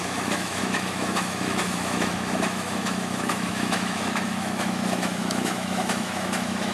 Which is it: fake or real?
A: fake